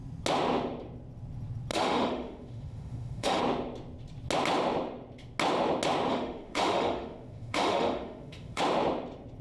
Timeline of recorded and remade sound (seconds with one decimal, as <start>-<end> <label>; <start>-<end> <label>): 0.0-1.7 recorded; 1.7-3.4 remade; 3.4-6.1 recorded; 6.1-8.6 remade; 8.6-9.4 recorded